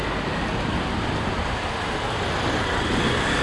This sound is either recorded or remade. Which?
recorded